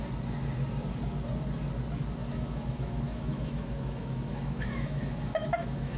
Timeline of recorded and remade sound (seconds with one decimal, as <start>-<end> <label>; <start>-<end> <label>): 0.0-2.2 recorded; 2.2-6.0 remade